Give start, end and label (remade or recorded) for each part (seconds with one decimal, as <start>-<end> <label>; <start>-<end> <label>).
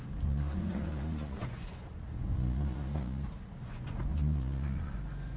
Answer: 0.0-5.4 remade